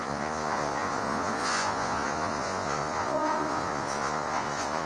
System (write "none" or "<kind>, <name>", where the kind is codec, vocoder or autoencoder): vocoder, Vocos